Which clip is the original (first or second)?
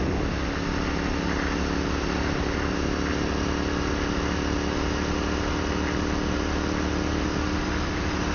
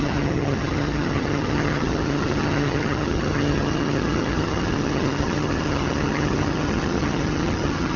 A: first